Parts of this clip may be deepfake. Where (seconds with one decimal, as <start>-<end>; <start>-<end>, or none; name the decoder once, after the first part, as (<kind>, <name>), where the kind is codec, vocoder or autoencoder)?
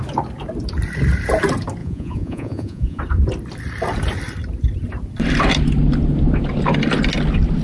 1.8-3.0 (vocoder, Vocos)